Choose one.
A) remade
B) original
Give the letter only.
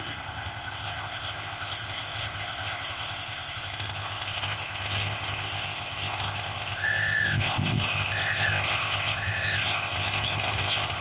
A